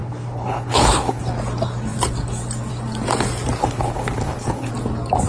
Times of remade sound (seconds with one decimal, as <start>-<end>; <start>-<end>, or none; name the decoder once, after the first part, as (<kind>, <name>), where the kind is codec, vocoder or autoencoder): 0.0-1.2 (codec, HILCodec); 3.6-4.7